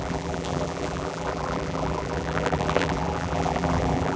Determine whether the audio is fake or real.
fake